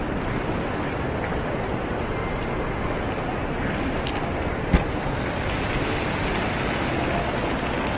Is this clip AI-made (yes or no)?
no